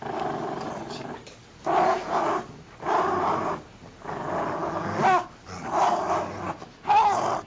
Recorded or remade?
recorded